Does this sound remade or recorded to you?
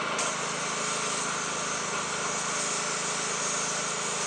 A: recorded